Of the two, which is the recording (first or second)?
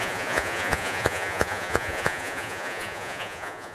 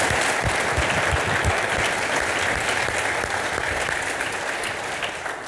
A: second